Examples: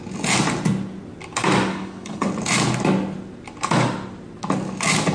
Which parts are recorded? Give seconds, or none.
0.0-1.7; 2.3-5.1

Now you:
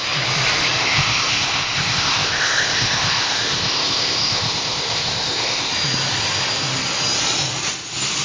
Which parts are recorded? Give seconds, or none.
0.0-0.8; 5.7-8.2

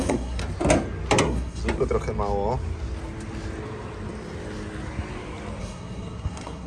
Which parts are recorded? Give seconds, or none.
0.4-1.2; 1.6-5.6

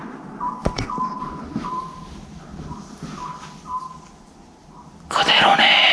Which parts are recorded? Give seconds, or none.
0.8-5.9